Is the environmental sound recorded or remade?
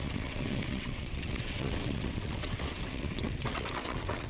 remade